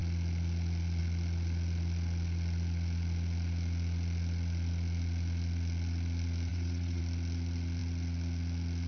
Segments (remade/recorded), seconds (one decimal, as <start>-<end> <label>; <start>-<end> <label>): 0.0-6.5 recorded; 6.5-7.0 remade; 7.0-8.9 recorded